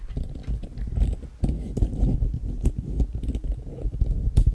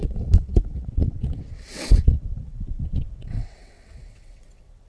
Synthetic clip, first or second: second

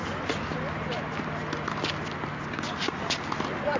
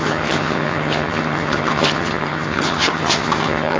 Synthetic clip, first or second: second